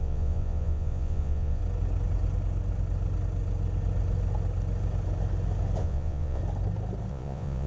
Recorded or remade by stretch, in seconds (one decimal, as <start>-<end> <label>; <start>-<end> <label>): 0.0-1.6 remade; 1.6-5.8 recorded; 5.8-6.4 remade; 6.4-7.1 recorded; 7.1-7.7 remade